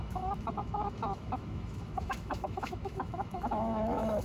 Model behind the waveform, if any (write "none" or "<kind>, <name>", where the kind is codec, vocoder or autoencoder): autoencoder, DAC-VAE